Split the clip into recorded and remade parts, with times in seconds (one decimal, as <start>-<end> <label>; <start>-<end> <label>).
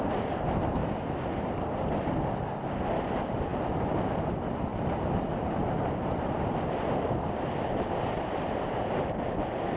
0.0-0.8 remade; 0.8-1.8 recorded; 1.8-9.8 remade